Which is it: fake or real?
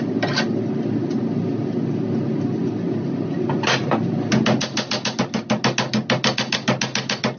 real